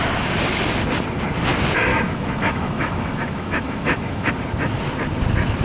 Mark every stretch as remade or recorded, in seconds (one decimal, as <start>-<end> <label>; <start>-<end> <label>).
0.0-1.9 recorded; 1.9-4.3 remade; 4.3-5.6 recorded